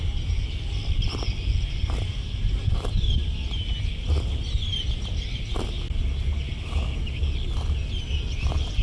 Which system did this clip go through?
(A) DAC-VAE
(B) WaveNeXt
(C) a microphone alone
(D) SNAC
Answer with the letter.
C